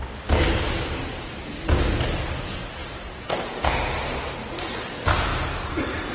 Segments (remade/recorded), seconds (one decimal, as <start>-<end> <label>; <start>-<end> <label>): 0.0-2.8 recorded; 2.8-3.7 remade; 3.7-6.1 recorded